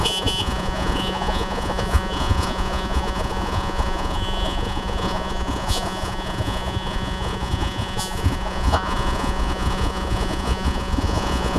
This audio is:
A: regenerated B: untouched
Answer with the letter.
A